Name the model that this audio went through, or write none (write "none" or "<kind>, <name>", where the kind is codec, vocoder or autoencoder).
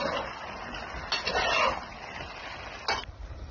none